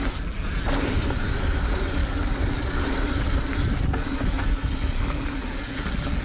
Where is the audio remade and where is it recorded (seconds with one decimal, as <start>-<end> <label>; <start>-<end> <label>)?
0.0-2.0 recorded; 2.0-2.8 remade; 2.8-6.2 recorded